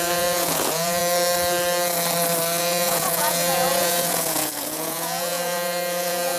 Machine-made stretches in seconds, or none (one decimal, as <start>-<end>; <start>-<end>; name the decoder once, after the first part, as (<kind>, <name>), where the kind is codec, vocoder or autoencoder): 0.0-1.0 (vocoder, Vocos); 2.6-6.4